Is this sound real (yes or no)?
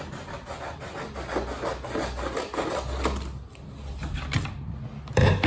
yes